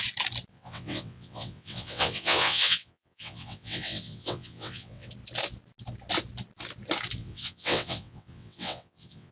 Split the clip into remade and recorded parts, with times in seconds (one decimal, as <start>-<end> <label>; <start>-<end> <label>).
0.0-0.5 recorded; 0.5-5.1 remade; 5.1-7.2 recorded; 7.2-9.3 remade